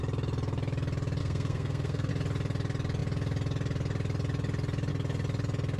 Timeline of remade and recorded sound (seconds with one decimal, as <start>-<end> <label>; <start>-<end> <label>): 0.0-1.2 recorded; 1.2-2.1 remade; 2.1-5.8 recorded